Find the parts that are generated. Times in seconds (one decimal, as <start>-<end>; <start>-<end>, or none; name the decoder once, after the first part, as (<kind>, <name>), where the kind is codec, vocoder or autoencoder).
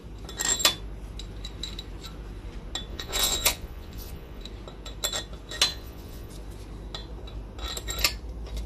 2.9-4.4 (vocoder, Vocos); 5.7-6.3